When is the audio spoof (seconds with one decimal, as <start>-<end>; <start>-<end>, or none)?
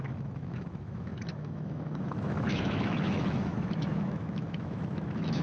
0.0-5.4